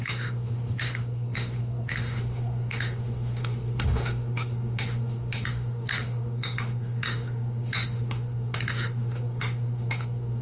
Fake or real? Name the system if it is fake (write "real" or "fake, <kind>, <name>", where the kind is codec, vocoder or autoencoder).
fake, autoencoder, DAC-VAE